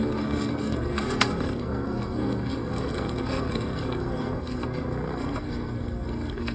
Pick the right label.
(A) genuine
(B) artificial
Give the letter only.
B